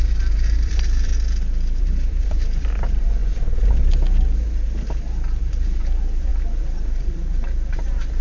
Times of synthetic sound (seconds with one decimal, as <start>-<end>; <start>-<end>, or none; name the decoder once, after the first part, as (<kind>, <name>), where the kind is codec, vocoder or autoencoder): 0.0-1.1 (vocoder, BigVGAN v2); 1.8-3.2; 5.4-8.2